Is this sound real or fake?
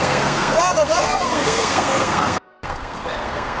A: fake